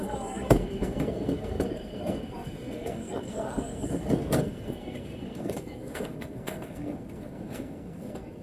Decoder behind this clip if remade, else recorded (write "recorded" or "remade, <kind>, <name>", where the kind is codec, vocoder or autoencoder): remade, codec, SNAC